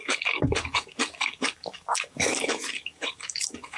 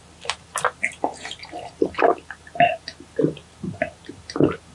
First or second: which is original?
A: second